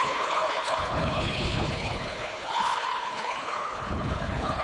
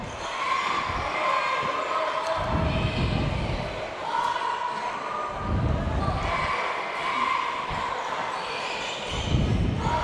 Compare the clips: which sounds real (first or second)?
second